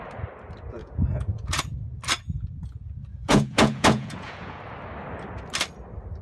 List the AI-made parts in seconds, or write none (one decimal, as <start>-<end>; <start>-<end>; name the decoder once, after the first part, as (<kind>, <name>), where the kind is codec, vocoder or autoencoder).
0.8-1.6 (vocoder, Vocos); 3.1-4.6